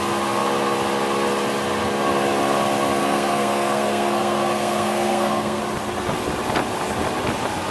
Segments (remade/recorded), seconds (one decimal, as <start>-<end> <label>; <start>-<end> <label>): 0.0-3.0 recorded; 3.0-5.6 remade; 5.6-7.7 recorded